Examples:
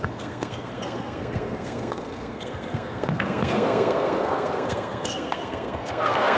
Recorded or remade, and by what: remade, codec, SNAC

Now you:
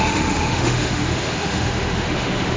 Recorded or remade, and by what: remade, autoencoder, DAC-VAE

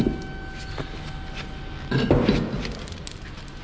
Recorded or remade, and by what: recorded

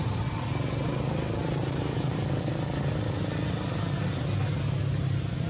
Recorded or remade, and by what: recorded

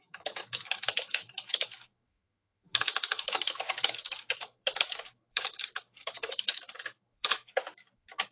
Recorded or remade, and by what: remade, autoencoder, DAC-VAE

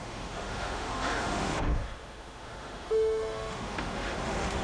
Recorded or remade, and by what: remade, autoencoder, DAC-VAE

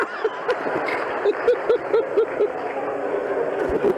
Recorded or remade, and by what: recorded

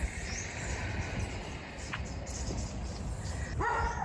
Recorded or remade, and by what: remade, vocoder, BigVGAN v2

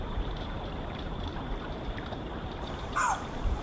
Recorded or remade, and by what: remade, vocoder, BigVGAN v2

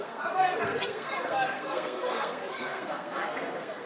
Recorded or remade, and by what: remade, codec, SNAC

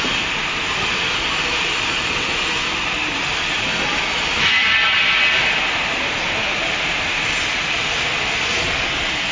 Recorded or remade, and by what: recorded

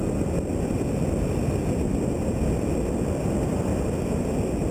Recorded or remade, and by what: recorded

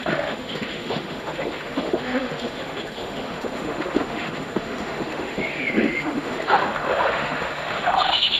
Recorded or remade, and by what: remade, autoencoder, DAC-VAE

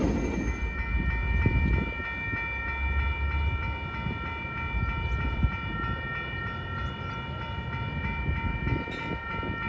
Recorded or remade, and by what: recorded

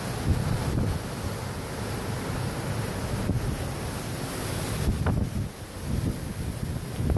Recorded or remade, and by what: recorded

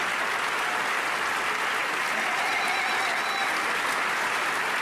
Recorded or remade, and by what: recorded